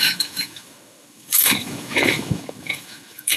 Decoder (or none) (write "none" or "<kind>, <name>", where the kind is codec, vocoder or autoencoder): autoencoder, DAC-VAE